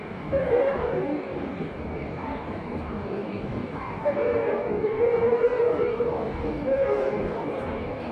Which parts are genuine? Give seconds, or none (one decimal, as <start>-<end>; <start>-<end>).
none